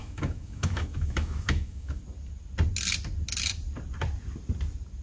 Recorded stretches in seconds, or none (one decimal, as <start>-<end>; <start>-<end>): 2.0-5.0